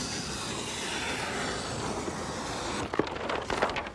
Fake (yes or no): no